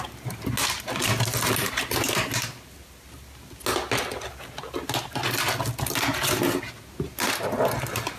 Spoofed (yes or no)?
no